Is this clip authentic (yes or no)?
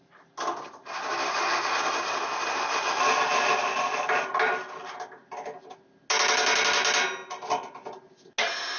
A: yes